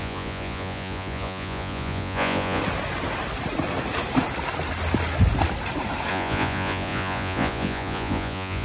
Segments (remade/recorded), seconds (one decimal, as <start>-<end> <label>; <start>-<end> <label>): 0.0-2.6 remade; 2.6-6.1 recorded; 6.1-8.6 remade